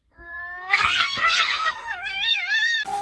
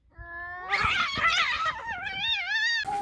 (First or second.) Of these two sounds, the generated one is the first